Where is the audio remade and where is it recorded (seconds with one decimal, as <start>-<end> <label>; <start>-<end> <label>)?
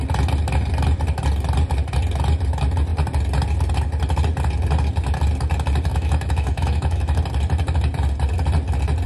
0.0-5.9 recorded; 5.9-7.2 remade; 7.2-9.1 recorded